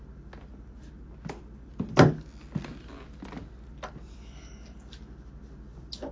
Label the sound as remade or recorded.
recorded